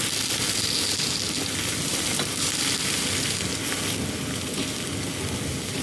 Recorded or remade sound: recorded